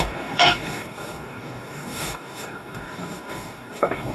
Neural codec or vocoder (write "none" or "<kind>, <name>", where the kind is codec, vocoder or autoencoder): codec, DAC